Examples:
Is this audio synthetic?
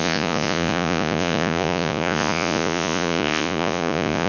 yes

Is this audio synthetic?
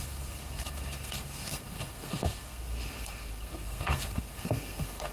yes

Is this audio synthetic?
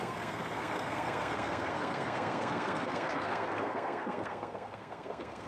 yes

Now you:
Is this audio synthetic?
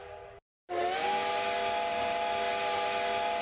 no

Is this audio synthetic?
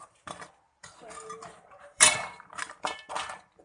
yes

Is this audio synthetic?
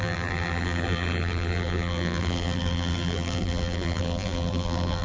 yes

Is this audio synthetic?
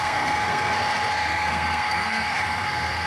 yes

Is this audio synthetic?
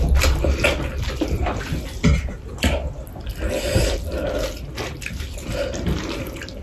no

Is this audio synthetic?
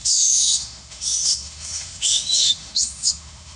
yes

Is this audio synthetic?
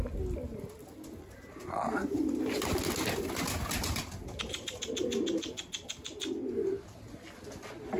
no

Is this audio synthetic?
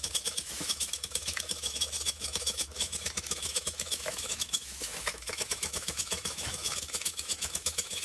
yes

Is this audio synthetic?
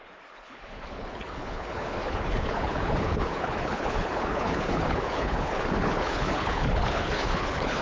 yes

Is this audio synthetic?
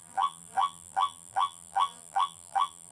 yes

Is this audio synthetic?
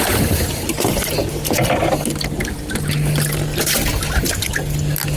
no